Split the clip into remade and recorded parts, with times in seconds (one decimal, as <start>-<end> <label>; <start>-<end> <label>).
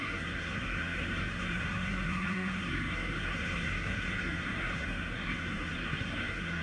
0.0-6.6 remade